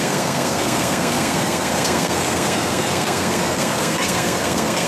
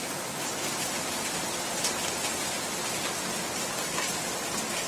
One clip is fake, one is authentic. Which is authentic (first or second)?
second